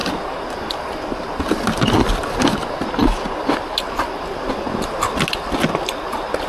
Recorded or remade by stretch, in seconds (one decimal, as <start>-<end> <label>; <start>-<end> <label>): 0.0-6.5 recorded